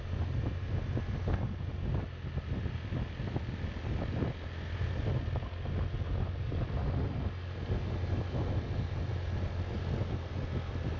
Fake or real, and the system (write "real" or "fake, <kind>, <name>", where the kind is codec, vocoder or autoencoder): real